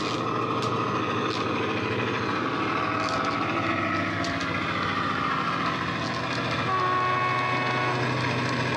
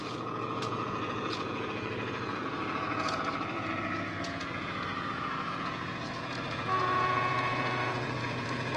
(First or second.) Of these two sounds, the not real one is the second